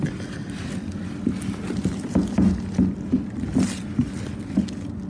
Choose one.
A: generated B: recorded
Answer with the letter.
B